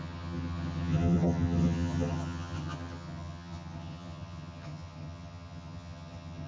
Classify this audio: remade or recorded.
remade